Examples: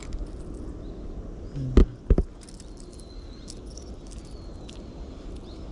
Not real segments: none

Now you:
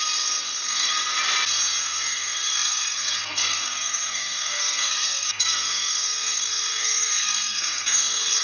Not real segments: 0.0-1.0 (codec, SNAC); 1.8-8.4

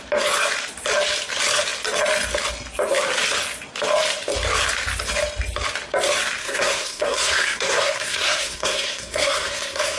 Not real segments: 6.4-10.0 (codec, SNAC)

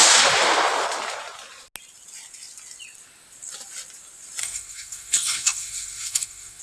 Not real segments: 4.4-6.6 (codec, SNAC)

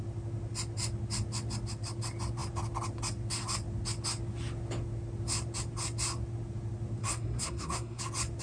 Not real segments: 7.0-8.0 (codec, SNAC)

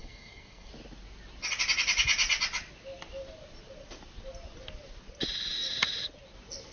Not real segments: 0.0-0.7 (codec, SNAC)

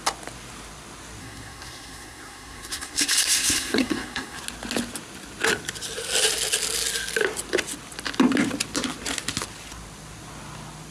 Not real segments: 1.2-4.4 (codec, SNAC)